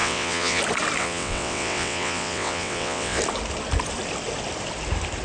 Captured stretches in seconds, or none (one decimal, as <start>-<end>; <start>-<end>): 0.6-1.0; 3.2-5.2

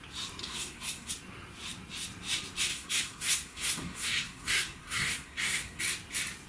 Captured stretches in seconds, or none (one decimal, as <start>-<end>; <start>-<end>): 0.0-0.4; 1.1-2.7; 5.8-6.5

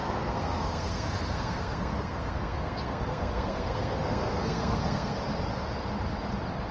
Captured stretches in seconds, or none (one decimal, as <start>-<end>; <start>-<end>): 5.2-6.7

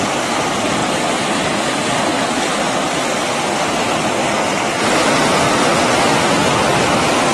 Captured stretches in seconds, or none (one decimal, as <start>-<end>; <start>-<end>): 0.0-7.3

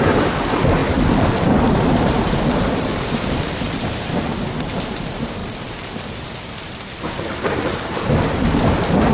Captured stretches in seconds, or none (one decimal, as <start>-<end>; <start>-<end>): none

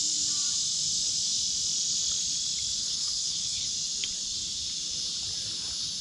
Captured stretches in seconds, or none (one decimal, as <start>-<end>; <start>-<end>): 0.0-2.8; 3.7-6.0

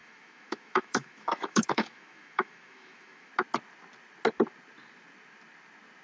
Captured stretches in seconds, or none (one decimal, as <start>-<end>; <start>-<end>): 3.3-6.0